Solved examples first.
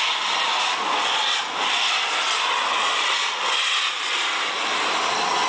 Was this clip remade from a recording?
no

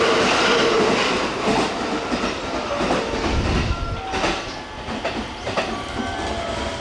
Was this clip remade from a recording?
no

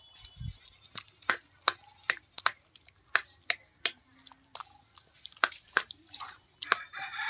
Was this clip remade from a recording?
no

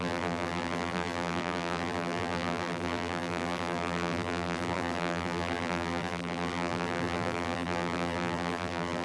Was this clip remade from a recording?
yes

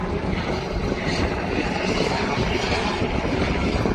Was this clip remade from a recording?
no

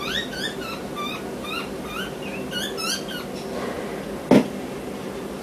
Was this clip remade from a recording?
no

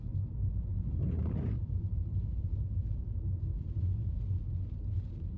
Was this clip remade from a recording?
yes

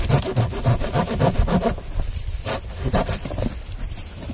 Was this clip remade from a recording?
yes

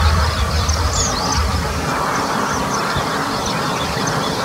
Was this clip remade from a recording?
no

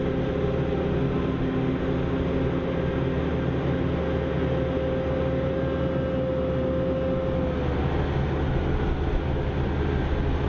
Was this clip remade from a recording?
no